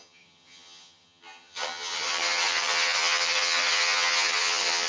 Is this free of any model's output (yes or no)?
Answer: no